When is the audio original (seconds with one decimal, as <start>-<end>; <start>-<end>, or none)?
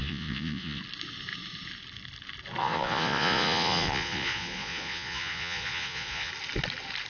0.8-2.6; 6.3-7.1